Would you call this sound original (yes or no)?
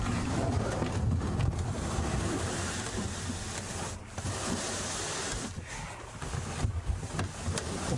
yes